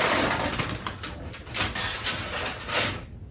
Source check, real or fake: real